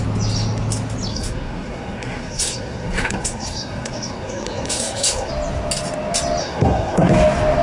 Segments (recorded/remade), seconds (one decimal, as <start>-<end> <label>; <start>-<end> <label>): 0.0-1.1 recorded; 1.1-5.3 remade; 5.3-6.4 recorded; 6.4-7.1 remade; 7.1-7.6 recorded